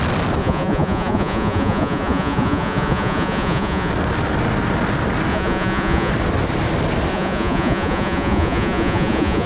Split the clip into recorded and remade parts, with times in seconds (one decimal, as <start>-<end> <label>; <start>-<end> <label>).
0.0-0.4 recorded; 0.4-3.9 remade; 3.9-5.3 recorded; 5.3-6.1 remade; 6.1-7.1 recorded; 7.1-9.5 remade